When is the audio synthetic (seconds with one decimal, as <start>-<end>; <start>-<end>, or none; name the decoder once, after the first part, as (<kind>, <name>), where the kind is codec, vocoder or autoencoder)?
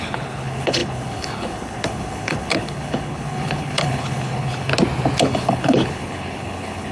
0.0-4.7 (codec, HILCodec); 5.2-6.9